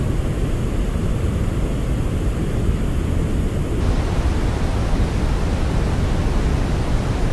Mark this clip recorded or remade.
recorded